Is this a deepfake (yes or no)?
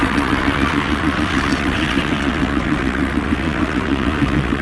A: yes